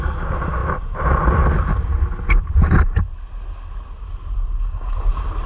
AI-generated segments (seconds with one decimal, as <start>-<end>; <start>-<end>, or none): none